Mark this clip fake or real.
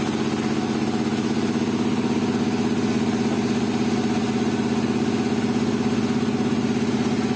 real